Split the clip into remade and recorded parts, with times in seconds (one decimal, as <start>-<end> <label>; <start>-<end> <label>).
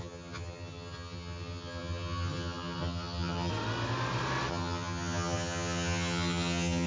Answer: 0.0-3.5 remade; 3.5-4.5 recorded; 4.5-6.9 remade